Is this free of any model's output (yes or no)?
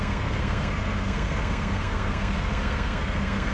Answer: no